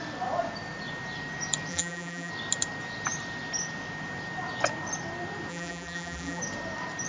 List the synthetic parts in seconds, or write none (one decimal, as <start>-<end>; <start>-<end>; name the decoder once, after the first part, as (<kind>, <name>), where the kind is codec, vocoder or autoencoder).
1.7-2.3 (vocoder, BigVGAN v2); 5.5-6.4